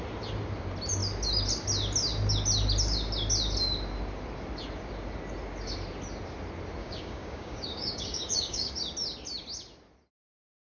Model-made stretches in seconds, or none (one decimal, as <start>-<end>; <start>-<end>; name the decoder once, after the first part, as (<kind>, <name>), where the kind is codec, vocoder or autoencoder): 6.8-8.7 (codec, DAC)